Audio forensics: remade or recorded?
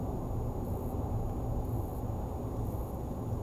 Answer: recorded